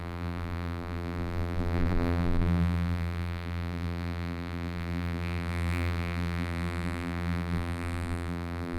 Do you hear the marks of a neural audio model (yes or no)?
yes